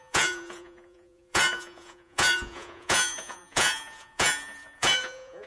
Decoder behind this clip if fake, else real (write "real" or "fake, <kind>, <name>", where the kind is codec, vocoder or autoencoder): fake, vocoder, Vocos